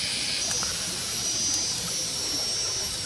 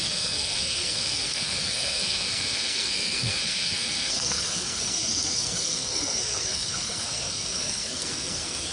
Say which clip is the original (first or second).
first